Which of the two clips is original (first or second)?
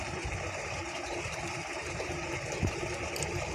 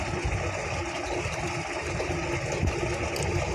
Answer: second